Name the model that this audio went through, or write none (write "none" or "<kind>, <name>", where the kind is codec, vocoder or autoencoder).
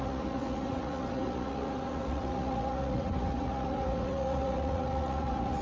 vocoder, Vocos